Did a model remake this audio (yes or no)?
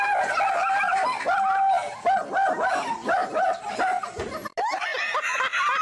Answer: no